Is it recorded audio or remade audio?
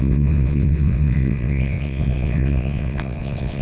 remade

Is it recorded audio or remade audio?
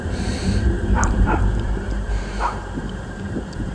remade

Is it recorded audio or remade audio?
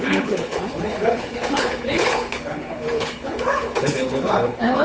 remade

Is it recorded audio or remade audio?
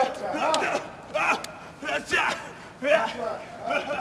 recorded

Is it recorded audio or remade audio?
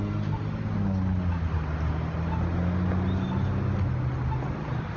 recorded